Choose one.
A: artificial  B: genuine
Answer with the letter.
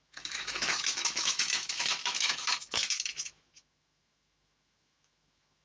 A